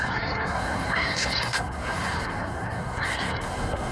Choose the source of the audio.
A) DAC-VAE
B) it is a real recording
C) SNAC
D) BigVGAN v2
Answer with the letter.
C